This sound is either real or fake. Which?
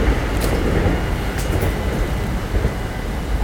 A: real